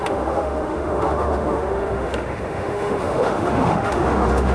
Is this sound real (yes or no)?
no